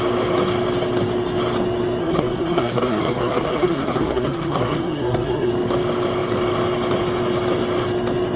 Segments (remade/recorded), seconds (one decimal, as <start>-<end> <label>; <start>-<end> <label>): 0.0-2.0 recorded; 2.0-5.5 remade; 5.5-8.4 recorded